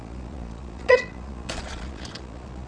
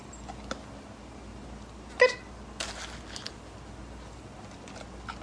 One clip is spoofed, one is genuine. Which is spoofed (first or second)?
first